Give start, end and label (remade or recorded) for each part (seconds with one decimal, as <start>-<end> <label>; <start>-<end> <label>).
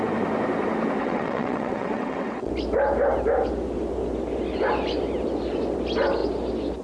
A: 0.0-1.0 recorded; 1.0-2.5 remade; 2.5-6.8 recorded